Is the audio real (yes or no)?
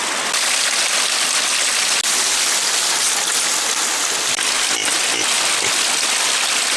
yes